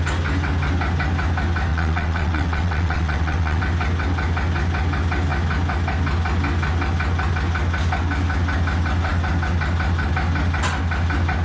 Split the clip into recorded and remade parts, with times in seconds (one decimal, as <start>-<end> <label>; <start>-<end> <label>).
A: 0.0-1.7 recorded; 1.7-3.6 remade; 3.6-11.4 recorded